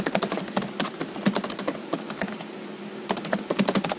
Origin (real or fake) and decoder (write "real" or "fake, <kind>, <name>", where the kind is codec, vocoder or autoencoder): real